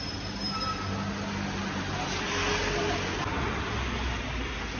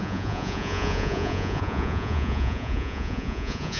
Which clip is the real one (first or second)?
first